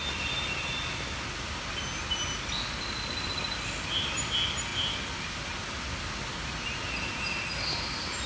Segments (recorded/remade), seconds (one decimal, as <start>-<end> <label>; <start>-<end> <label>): 0.0-8.3 recorded